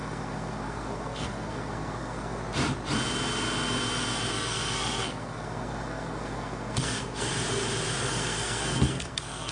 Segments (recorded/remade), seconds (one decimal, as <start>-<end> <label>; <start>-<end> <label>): 0.0-2.4 remade; 2.4-4.3 recorded; 4.3-7.3 remade; 7.3-8.0 recorded; 8.0-9.5 remade